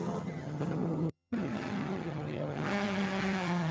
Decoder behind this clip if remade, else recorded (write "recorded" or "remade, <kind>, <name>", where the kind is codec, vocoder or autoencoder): remade, vocoder, HiFi-GAN